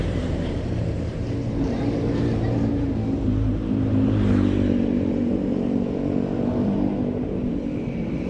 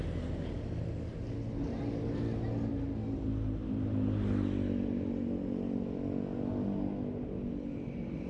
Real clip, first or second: second